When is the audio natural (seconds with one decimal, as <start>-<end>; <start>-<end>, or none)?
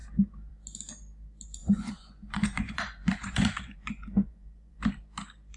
0.0-1.6; 4.8-5.6